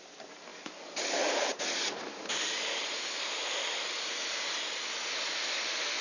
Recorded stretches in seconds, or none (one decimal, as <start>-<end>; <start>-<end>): 0.0-0.5; 4.1-6.0